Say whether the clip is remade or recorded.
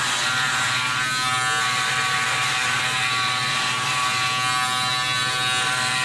recorded